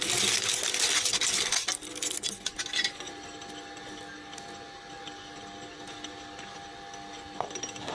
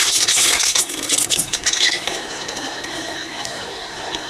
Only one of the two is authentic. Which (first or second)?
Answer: first